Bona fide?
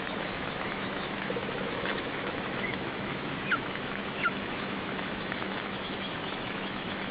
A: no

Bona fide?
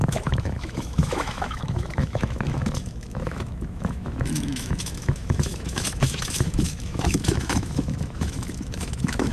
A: no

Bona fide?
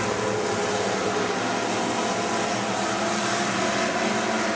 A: yes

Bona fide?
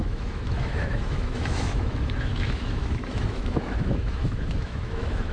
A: no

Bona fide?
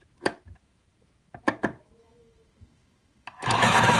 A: no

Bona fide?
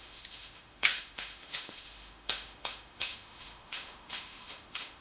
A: no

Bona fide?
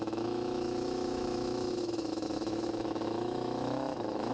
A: no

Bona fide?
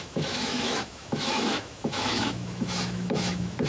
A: no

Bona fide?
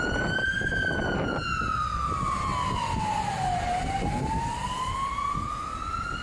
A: yes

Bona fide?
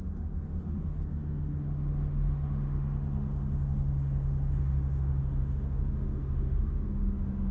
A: no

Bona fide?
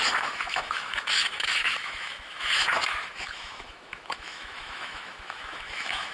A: no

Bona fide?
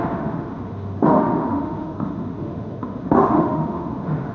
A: no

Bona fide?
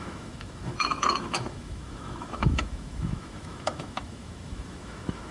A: no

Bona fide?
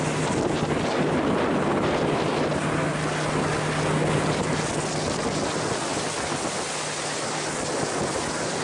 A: yes